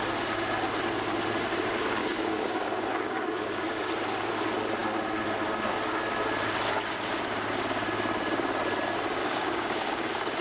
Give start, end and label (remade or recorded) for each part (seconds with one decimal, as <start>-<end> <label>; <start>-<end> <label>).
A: 0.0-2.0 recorded; 2.0-3.9 remade; 3.9-9.2 recorded; 9.2-10.4 remade